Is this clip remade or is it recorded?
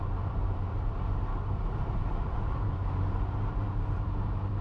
remade